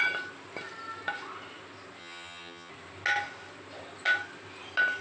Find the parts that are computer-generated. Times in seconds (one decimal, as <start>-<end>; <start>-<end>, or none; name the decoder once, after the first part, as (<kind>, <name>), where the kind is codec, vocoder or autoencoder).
2.0-2.7 (vocoder, HiFi-GAN)